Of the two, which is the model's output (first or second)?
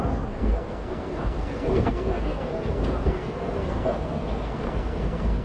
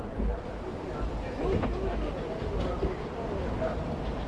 first